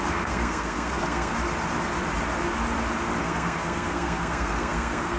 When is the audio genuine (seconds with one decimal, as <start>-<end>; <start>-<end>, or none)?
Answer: 1.3-3.2